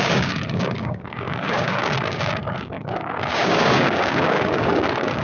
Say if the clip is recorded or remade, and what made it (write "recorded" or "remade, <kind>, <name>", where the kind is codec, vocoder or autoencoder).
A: remade, codec, DAC